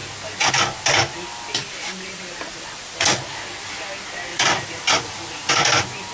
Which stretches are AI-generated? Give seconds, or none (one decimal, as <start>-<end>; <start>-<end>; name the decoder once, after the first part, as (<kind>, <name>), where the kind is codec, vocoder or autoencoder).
1.6-2.2 (vocoder, BigVGAN v2); 4.3-5.5